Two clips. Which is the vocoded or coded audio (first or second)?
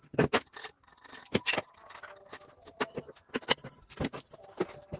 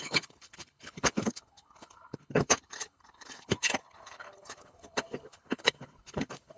second